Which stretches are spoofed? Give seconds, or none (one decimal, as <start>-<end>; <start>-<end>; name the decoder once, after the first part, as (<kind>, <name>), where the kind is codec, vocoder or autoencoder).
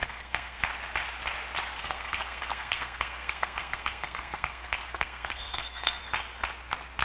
0.0-0.6 (codec, SNAC); 1.8-6.0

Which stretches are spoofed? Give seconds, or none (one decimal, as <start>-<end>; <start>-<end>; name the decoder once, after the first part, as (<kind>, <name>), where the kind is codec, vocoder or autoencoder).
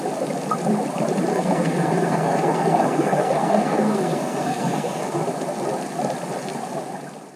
1.3-5.2 (codec, SNAC)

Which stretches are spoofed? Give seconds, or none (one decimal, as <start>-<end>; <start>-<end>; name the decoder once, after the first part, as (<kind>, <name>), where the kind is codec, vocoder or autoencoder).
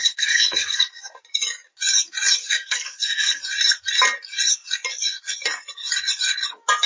0.0-0.9 (codec, SNAC); 2.4-3.4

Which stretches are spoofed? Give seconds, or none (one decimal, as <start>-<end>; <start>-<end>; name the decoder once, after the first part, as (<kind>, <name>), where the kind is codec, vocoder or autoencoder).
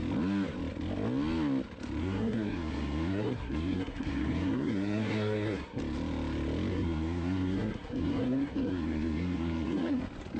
2.0-5.8 (codec, SNAC); 6.7-10.0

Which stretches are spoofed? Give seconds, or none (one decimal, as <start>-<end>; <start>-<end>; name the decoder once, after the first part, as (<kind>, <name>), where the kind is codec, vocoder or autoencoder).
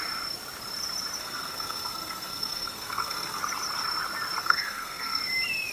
1.2-3.4 (codec, SNAC); 4.4-5.2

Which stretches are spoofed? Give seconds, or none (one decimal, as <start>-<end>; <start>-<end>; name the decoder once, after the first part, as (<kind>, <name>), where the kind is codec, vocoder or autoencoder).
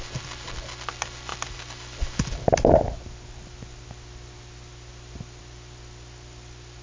none